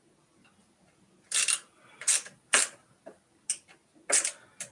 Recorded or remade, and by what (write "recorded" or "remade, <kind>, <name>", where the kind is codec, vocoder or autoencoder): recorded